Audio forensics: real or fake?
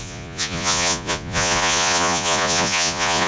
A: fake